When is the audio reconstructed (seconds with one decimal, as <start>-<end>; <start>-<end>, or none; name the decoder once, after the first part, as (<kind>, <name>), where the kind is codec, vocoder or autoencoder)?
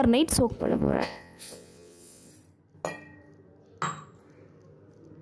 0.6-2.3 (vocoder, WaveNeXt)